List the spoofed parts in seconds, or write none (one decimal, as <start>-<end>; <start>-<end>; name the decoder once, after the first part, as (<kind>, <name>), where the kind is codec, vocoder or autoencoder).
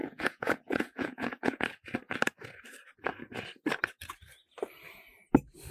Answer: 0.0-1.6 (vocoder, Vocos)